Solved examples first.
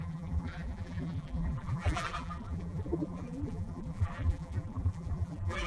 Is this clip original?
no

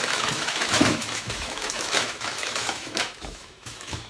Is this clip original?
no